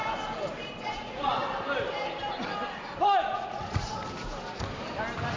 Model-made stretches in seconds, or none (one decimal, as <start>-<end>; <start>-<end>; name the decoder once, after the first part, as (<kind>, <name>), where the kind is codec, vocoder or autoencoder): 0.8-1.4 (vocoder, Vocos); 3.0-4.0